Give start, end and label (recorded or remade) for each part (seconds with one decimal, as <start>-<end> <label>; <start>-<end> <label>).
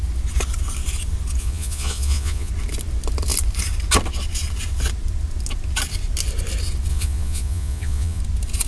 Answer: 0.0-1.4 recorded; 1.4-2.5 remade; 2.5-6.9 recorded; 6.9-8.2 remade; 8.2-8.7 recorded